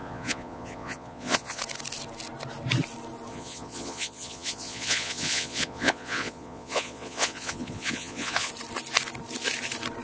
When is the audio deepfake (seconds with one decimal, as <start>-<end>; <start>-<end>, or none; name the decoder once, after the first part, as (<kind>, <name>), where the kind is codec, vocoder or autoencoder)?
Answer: 0.0-1.6 (vocoder, Vocos); 3.3-8.5